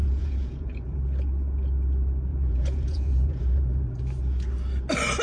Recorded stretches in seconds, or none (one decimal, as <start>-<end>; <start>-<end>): 1.0-2.3; 4.0-5.2